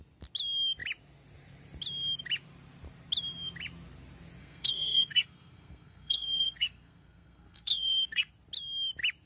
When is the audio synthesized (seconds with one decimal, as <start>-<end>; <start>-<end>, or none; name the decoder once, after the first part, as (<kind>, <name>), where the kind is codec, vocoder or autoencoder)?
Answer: 4.4-8.3 (codec, SNAC)